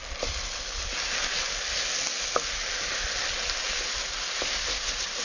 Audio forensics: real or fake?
real